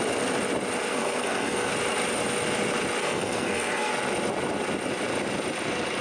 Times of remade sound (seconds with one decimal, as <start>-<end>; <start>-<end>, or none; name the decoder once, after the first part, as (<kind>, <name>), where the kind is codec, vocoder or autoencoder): 0.9-1.7 (codec, SNAC); 3.0-3.9